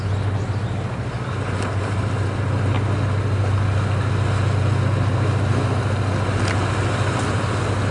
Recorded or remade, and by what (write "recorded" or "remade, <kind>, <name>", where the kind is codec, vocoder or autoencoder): recorded